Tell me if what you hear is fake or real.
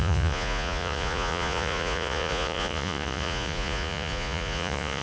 fake